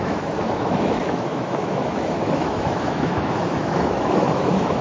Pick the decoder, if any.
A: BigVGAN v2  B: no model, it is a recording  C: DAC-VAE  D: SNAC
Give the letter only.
C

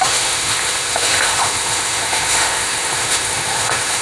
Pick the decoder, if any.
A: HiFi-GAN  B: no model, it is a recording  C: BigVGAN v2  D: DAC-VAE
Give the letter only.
D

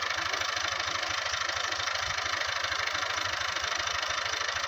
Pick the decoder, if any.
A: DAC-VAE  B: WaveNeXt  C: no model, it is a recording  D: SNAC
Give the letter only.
C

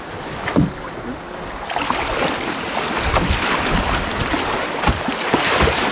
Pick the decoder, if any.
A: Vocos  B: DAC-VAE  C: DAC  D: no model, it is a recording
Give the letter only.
D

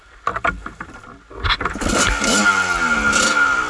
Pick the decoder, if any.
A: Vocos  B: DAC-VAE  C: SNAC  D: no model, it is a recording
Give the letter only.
D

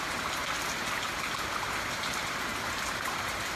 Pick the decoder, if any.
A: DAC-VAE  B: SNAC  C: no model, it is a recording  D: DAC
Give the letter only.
C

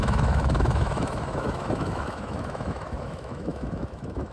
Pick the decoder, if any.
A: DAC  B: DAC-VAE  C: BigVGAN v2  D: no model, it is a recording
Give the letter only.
B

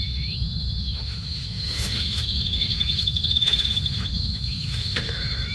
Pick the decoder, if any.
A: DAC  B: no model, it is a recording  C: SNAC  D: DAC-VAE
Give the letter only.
D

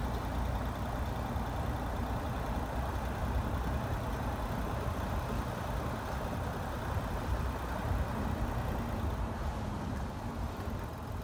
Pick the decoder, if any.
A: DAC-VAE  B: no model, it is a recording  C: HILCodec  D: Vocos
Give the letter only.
B